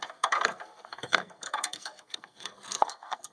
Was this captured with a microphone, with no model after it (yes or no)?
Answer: no